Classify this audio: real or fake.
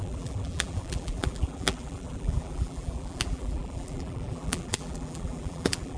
fake